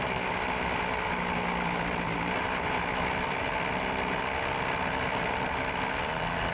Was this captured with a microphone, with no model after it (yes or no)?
yes